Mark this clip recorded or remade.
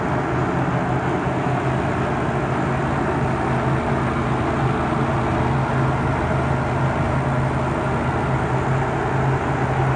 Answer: recorded